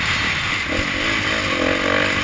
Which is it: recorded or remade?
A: recorded